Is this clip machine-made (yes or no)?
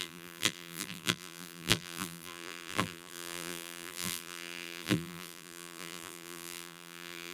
yes